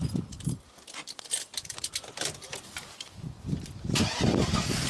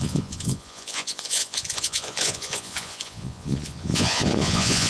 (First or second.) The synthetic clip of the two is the second